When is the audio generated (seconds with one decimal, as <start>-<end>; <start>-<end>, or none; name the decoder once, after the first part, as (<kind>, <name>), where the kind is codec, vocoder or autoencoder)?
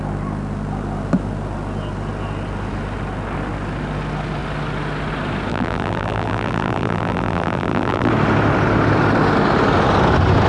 5.5-8.1 (vocoder, BigVGAN v2)